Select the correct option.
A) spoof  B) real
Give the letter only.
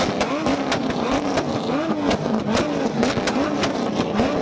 B